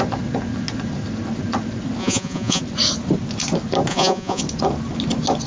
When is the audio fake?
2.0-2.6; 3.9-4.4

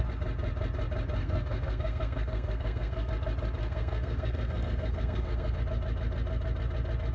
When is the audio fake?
1.2-3.1; 3.6-5.6

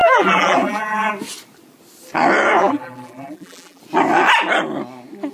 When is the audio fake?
0.0-1.1; 2.6-3.8

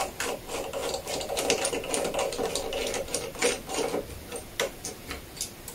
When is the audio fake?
none

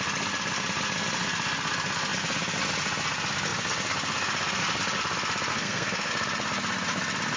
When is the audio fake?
5.5-6.1

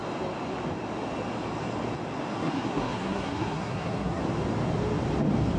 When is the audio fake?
2.4-4.2

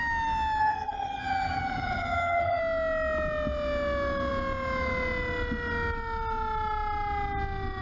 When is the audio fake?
0.6-2.6